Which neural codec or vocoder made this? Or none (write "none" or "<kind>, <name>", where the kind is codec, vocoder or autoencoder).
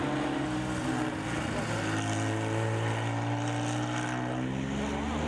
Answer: none